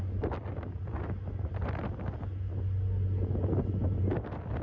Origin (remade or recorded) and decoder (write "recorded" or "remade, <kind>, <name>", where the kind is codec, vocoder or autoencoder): recorded